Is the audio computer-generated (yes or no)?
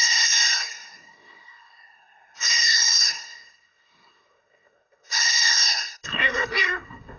yes